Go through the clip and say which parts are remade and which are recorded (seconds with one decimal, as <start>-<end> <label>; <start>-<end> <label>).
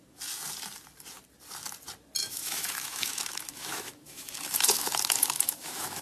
0.0-2.2 recorded; 2.2-6.0 remade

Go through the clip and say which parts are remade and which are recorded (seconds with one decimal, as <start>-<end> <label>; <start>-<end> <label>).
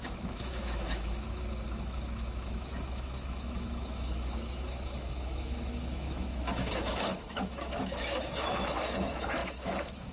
0.0-10.1 remade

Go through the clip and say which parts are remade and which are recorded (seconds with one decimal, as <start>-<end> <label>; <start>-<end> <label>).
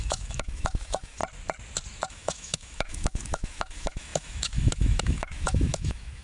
0.0-1.2 remade; 1.2-2.1 recorded; 2.1-6.2 remade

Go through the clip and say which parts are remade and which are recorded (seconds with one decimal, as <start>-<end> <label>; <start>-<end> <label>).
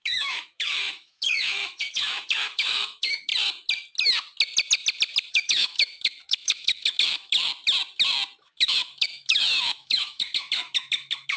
0.0-3.3 remade; 3.3-5.3 recorded; 5.3-7.5 remade; 7.5-8.4 recorded; 8.4-11.4 remade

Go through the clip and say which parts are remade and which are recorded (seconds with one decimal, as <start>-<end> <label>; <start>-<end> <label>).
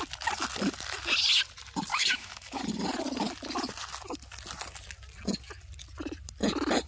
0.0-1.9 recorded; 1.9-2.6 remade; 2.6-6.9 recorded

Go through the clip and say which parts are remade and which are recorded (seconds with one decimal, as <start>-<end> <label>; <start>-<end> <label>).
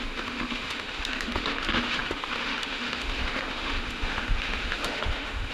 0.0-5.5 remade